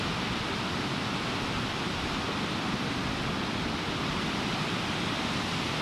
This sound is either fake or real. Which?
fake